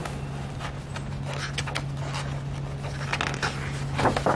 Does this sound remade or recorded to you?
recorded